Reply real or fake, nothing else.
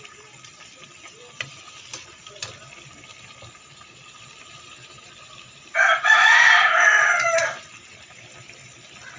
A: fake